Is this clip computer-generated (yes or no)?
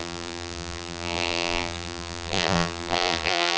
yes